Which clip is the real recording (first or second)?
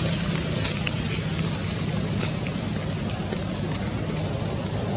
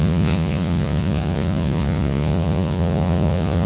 first